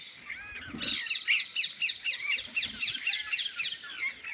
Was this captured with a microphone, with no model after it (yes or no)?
yes